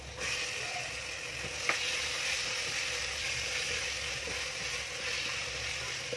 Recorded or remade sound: recorded